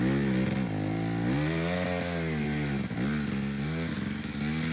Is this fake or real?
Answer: real